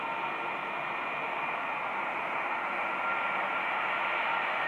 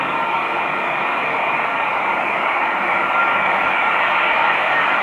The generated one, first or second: second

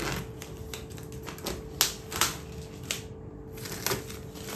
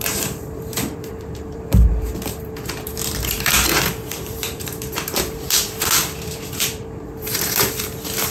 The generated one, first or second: second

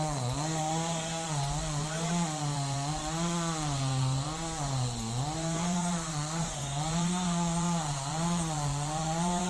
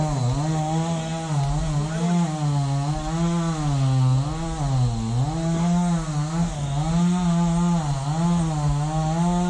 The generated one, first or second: first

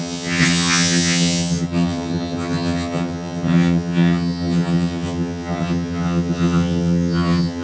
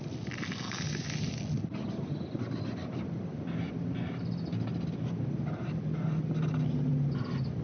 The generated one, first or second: first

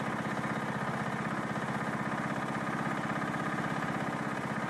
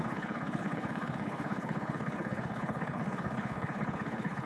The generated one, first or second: second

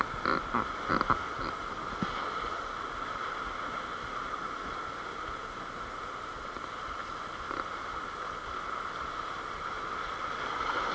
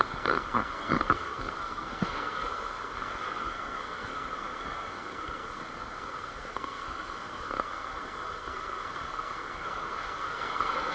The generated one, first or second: second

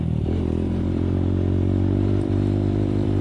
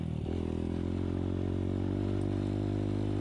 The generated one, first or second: first